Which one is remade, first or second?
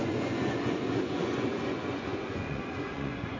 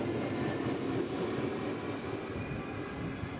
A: first